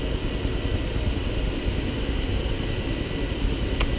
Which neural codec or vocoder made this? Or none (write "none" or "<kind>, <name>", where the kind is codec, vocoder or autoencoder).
none